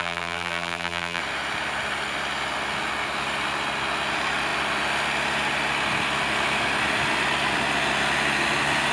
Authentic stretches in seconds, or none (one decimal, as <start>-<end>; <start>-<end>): 1.2-8.9